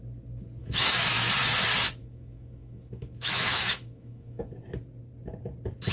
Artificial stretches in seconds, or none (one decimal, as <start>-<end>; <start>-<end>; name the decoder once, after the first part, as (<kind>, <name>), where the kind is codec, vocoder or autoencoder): 0.6-1.3 (autoencoder, DAC-VAE); 2.0-4.4